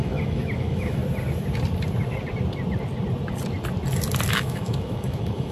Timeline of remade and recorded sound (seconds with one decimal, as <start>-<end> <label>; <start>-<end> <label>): 0.0-1.0 remade; 1.0-4.3 recorded; 4.3-5.5 remade